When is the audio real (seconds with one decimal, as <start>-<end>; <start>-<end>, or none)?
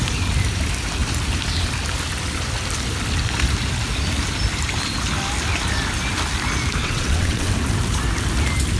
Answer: 0.0-6.8; 7.5-8.8